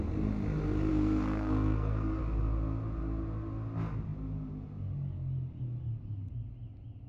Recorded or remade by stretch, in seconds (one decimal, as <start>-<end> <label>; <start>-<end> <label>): 0.0-0.9 recorded; 0.9-2.2 remade; 2.2-7.1 recorded